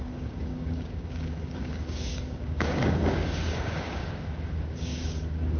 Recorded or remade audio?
remade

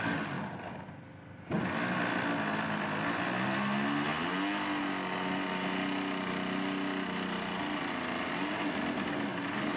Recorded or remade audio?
recorded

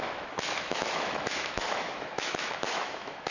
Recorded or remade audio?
remade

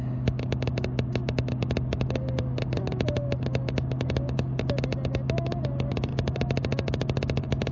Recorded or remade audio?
recorded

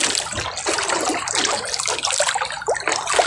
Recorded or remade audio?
recorded